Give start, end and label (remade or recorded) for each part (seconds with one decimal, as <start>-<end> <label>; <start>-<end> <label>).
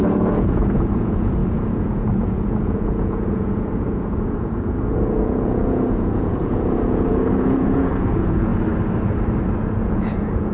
0.0-8.5 remade; 8.5-9.6 recorded; 9.6-10.5 remade